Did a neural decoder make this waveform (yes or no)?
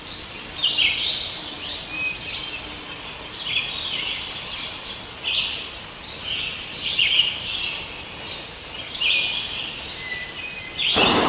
no